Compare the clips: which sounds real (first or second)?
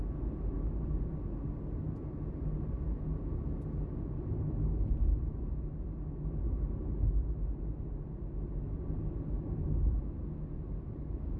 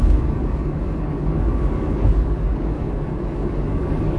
first